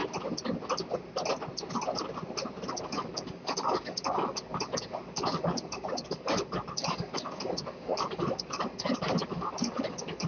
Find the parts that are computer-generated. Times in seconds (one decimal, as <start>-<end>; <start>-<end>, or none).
2.7-10.3